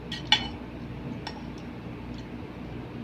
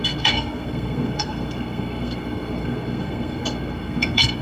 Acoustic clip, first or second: first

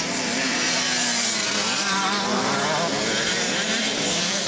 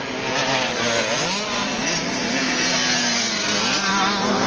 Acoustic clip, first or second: second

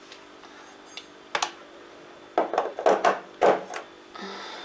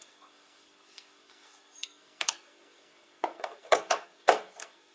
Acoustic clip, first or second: first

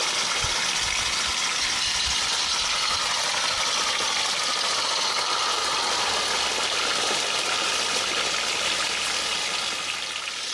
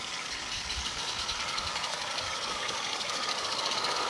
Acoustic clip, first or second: first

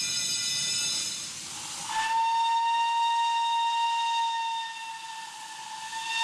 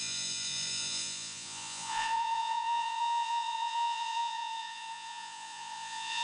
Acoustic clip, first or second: first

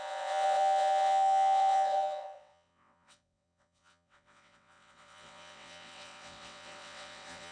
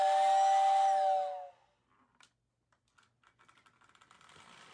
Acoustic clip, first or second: second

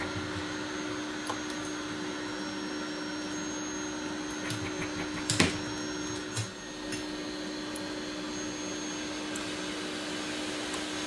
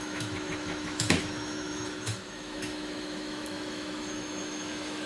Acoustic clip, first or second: first